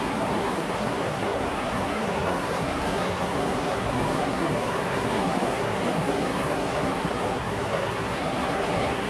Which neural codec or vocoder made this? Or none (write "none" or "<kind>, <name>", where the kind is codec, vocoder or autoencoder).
codec, SNAC